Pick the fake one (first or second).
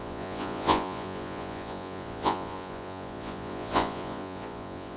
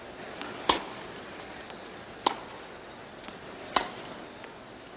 first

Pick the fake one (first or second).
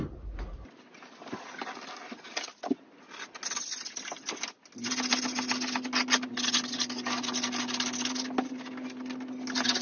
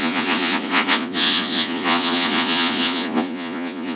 second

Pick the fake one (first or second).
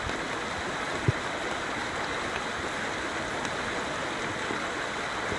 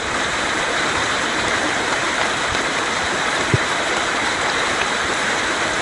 second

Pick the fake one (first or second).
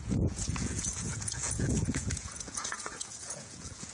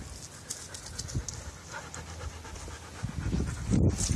first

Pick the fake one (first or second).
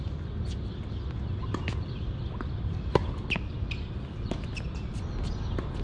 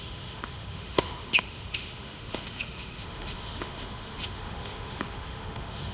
second